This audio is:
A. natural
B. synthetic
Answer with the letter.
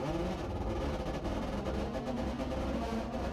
A